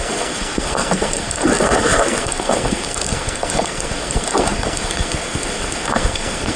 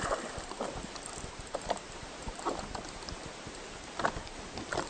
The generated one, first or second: first